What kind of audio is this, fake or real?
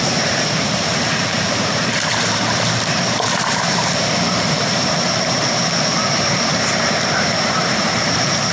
fake